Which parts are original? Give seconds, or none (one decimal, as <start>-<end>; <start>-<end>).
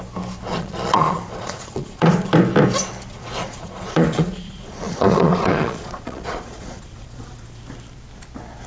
0.0-0.5; 2.1-3.1; 7.4-8.7